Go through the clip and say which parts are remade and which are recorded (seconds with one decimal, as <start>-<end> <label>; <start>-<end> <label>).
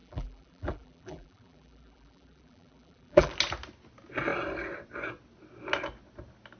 0.0-3.3 remade; 3.3-6.6 recorded